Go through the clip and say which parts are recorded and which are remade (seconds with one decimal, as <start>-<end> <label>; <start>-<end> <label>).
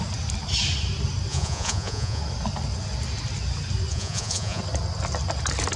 0.0-1.3 recorded; 1.3-2.2 remade; 2.2-3.9 recorded; 3.9-4.6 remade; 4.6-5.8 recorded